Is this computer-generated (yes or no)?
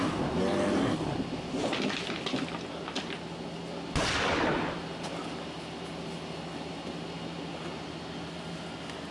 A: no